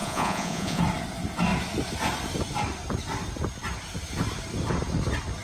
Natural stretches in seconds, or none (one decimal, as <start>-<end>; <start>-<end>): 0.8-5.4